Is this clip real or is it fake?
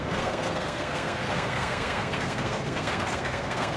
fake